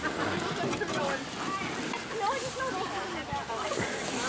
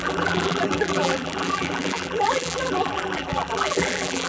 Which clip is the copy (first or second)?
second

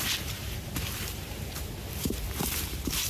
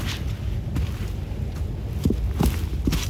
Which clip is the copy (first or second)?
first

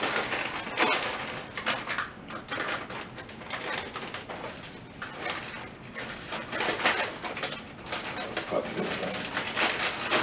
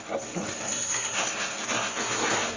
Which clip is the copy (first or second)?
second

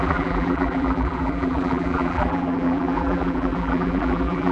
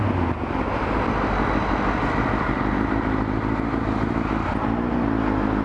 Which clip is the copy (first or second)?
first